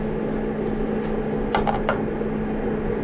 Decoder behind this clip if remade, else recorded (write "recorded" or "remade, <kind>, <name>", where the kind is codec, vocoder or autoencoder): recorded